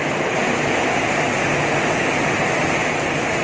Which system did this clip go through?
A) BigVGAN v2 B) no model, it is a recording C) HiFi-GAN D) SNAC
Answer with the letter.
B